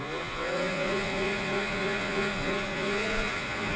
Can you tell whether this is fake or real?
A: fake